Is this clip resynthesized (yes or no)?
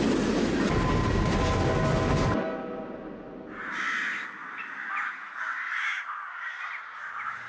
no